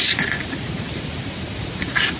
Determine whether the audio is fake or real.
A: real